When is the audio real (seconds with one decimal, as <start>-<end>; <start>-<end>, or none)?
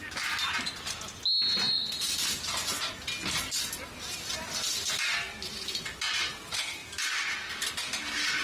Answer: 0.0-8.4